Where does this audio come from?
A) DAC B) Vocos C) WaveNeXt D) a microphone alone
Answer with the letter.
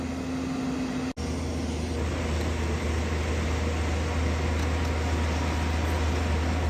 D